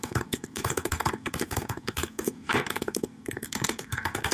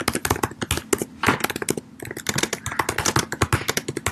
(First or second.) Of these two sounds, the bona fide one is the second